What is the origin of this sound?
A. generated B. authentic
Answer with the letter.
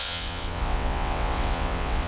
A